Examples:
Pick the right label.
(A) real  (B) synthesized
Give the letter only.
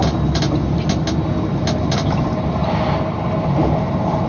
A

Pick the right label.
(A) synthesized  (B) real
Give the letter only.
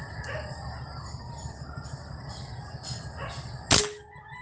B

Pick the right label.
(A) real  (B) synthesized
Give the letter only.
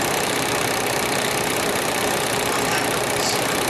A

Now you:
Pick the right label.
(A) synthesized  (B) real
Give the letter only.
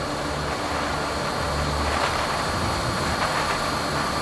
B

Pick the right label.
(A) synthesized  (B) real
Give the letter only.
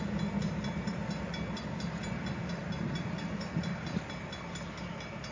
B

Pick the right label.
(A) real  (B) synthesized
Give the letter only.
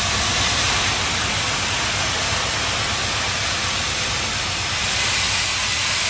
A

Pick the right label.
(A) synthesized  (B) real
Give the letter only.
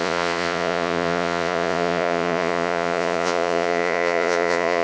A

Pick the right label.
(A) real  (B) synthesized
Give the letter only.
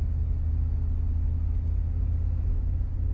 A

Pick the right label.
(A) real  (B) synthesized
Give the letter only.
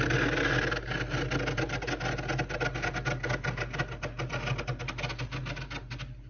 A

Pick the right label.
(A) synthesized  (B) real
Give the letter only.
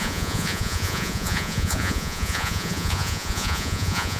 A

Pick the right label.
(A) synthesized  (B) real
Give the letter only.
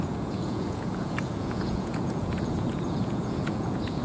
A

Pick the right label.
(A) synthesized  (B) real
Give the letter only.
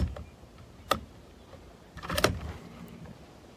B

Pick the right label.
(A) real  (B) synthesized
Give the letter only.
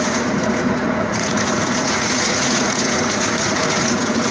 B